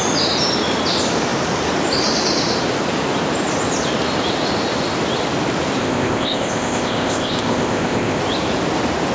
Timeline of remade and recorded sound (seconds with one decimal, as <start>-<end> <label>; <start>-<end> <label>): 0.0-5.8 recorded; 5.8-8.2 remade; 8.2-9.1 recorded

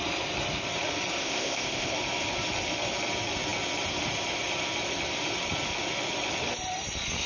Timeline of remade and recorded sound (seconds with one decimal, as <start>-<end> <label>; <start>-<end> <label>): 0.0-1.2 recorded; 1.2-1.9 remade; 1.9-7.3 recorded

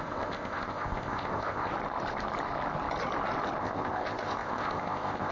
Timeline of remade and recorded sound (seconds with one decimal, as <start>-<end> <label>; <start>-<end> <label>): 0.0-1.7 remade; 1.7-3.6 recorded; 3.6-5.3 remade

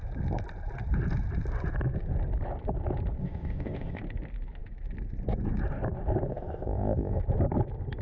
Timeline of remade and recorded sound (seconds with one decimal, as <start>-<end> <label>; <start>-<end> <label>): 0.0-3.2 recorded; 3.2-4.0 remade; 4.0-6.3 recorded; 6.3-7.2 remade; 7.2-8.0 recorded

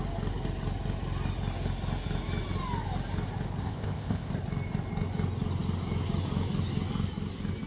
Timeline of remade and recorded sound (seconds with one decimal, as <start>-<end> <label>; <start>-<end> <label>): 0.0-3.6 recorded; 3.6-4.3 remade; 4.3-7.7 recorded

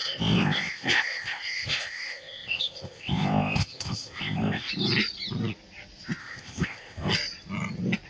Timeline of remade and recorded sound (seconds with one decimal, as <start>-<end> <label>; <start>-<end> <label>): 0.0-4.7 remade; 4.7-6.2 recorded; 6.2-7.1 remade; 7.1-8.1 recorded

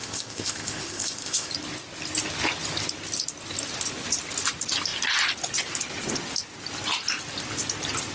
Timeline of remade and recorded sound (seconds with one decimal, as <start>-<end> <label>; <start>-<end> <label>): 0.0-1.5 remade; 1.5-8.1 recorded

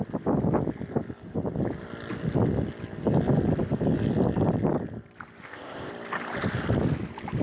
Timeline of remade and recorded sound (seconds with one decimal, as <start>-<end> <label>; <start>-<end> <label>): 0.0-5.4 recorded; 5.4-5.9 remade; 5.9-7.4 recorded